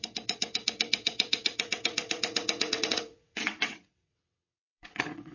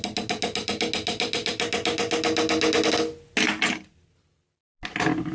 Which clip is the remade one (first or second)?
first